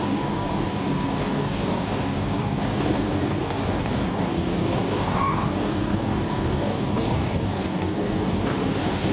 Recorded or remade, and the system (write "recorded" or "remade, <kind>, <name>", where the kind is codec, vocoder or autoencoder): remade, codec, DAC